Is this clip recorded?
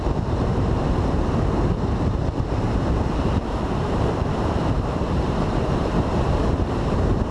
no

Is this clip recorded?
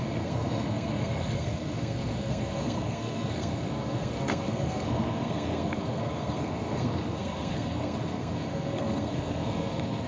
no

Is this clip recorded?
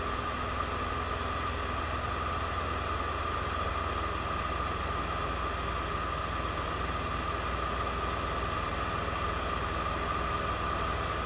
yes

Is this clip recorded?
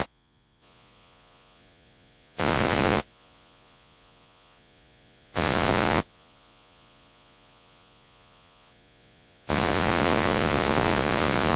no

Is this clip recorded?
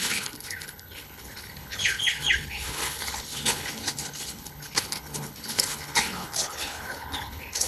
no